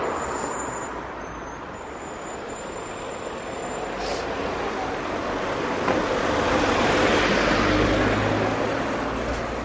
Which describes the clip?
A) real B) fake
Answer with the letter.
A